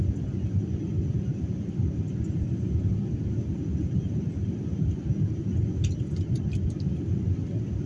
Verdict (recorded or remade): recorded